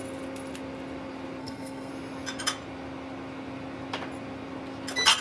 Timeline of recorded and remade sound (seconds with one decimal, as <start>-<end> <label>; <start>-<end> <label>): 0.0-1.4 recorded; 1.4-1.9 remade; 1.9-5.2 recorded

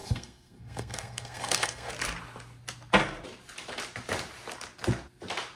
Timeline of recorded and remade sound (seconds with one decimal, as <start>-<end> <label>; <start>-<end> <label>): 0.0-1.9 remade; 1.9-5.6 recorded

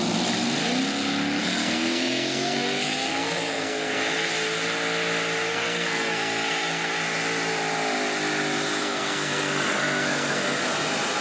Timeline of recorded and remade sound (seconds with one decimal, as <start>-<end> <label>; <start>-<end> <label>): 0.0-1.4 recorded; 1.4-4.3 remade; 4.3-5.5 recorded; 5.5-7.0 remade; 7.0-8.8 recorded; 8.8-10.6 remade; 10.6-11.2 recorded

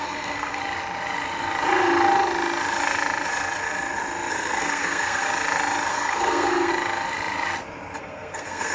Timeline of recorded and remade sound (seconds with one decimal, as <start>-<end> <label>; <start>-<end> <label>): 0.0-0.6 remade; 0.6-4.3 recorded; 4.3-5.3 remade; 5.3-5.9 recorded; 5.9-6.7 remade; 6.7-8.0 recorded; 8.0-8.7 remade

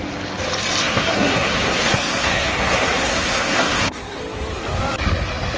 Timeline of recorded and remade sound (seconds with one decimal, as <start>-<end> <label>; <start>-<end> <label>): 0.0-0.8 recorded; 0.8-4.2 remade; 4.2-5.6 recorded